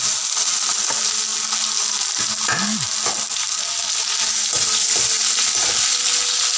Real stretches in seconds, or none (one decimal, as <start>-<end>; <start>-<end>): 0.0-6.6